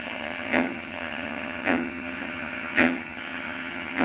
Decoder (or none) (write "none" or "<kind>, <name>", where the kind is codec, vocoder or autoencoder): vocoder, HiFi-GAN